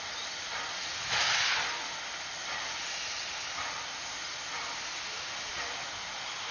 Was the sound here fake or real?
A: real